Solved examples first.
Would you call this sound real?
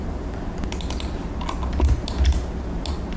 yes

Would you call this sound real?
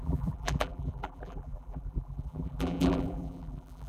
no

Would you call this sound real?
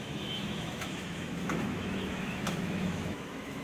no